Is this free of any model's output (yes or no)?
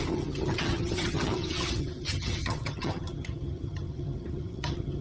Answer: no